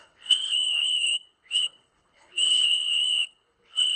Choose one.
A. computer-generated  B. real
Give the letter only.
A